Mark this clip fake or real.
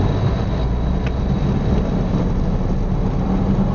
real